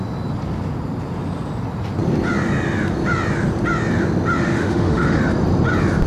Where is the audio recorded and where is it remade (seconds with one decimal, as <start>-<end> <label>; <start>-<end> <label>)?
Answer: 0.0-4.4 recorded; 4.4-5.2 remade; 5.2-6.1 recorded